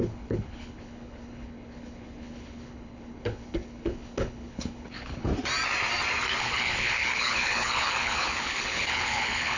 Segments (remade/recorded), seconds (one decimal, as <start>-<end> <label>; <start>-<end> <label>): 0.0-5.3 remade; 5.3-6.4 recorded; 6.4-9.6 remade